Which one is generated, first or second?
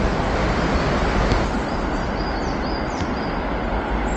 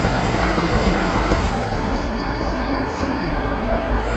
second